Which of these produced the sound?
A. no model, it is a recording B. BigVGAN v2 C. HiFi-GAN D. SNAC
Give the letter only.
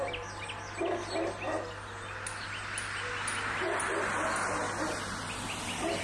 A